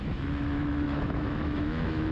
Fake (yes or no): yes